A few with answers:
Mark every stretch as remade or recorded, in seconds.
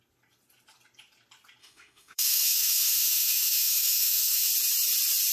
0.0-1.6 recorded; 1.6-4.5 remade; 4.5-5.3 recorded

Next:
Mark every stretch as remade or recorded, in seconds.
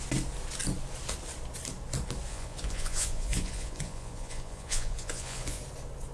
0.0-2.3 recorded; 2.3-5.6 remade; 5.6-6.1 recorded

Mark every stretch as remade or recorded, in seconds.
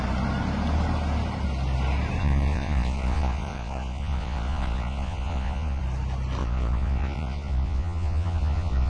0.0-2.2 recorded; 2.2-5.8 remade; 5.8-6.4 recorded; 6.4-8.9 remade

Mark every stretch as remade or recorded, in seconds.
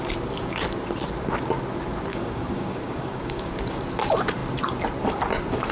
0.0-2.1 recorded; 2.1-3.5 remade; 3.5-5.7 recorded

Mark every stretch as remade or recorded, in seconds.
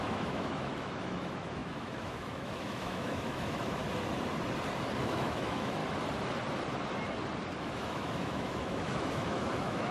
0.0-3.8 remade; 3.8-5.0 recorded; 5.0-5.8 remade; 5.8-7.6 recorded; 7.6-9.9 remade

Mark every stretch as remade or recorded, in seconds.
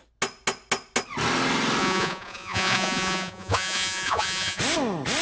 0.0-1.8 recorded; 1.8-4.6 remade; 4.6-5.2 recorded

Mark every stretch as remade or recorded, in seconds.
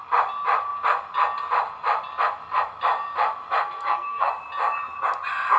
0.0-3.6 recorded; 3.6-4.3 remade; 4.3-5.6 recorded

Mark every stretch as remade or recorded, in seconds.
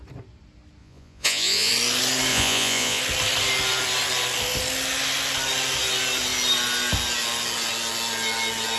0.0-0.8 recorded; 0.8-1.7 remade; 1.7-2.3 recorded; 2.3-3.0 remade; 3.0-8.8 recorded